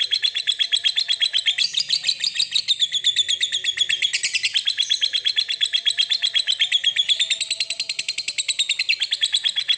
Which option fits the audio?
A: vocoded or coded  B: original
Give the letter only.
B